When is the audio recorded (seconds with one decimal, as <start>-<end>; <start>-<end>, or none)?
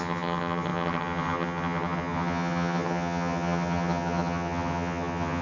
none